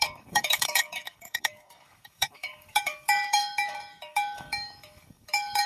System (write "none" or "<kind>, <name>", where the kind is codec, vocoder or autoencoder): codec, DAC